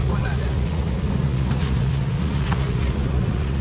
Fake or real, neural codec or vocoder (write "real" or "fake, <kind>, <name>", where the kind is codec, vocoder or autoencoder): fake, vocoder, Vocos